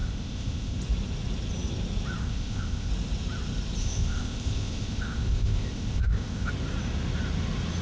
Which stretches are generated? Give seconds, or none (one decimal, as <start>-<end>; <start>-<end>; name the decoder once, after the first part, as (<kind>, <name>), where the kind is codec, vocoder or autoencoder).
0.0-0.8 (codec, ZipCodec); 2.2-2.9; 3.8-6.5